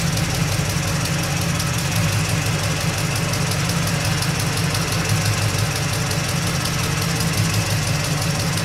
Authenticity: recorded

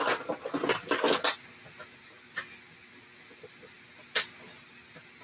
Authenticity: recorded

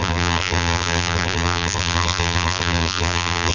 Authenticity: remade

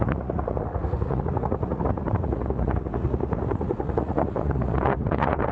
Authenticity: remade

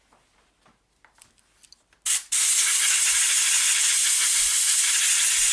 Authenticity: recorded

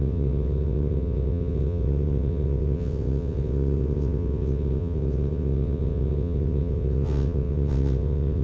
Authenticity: remade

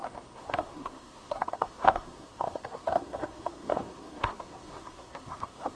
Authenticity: remade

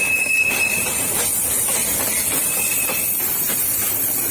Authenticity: recorded